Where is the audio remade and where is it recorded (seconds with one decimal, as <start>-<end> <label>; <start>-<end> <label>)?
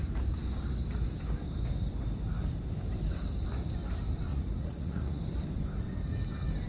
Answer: 0.0-4.3 recorded; 4.3-5.2 remade; 5.2-6.7 recorded